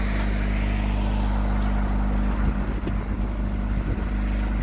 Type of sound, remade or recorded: recorded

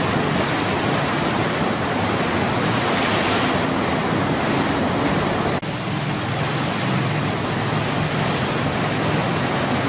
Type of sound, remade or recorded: recorded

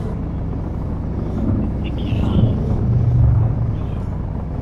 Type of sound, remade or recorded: recorded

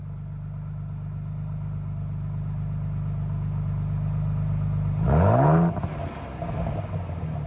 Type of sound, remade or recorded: recorded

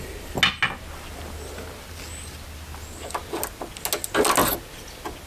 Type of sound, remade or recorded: recorded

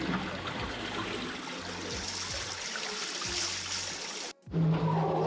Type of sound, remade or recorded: recorded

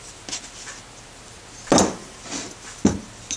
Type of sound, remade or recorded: recorded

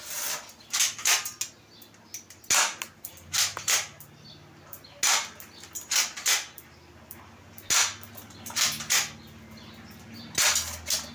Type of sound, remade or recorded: recorded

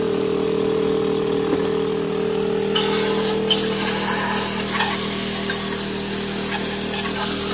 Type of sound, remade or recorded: recorded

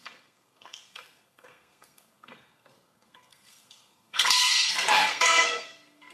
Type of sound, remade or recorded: remade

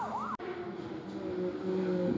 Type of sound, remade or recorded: recorded